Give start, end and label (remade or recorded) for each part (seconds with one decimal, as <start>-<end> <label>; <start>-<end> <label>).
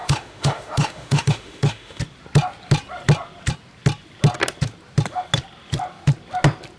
0.0-2.0 remade; 2.0-6.8 recorded